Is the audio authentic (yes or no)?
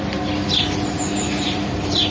yes